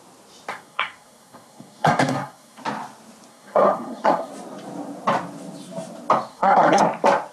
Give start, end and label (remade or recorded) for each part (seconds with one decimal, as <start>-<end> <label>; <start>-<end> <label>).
0.0-0.5 recorded; 0.5-2.6 remade; 2.6-3.3 recorded; 3.3-4.3 remade; 4.3-6.3 recorded; 6.3-6.8 remade; 6.8-7.3 recorded